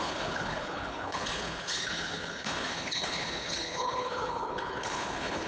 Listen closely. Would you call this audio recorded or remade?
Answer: remade